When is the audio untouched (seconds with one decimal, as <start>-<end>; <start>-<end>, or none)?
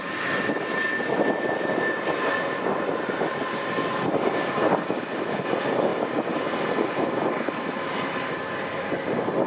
0.0-9.5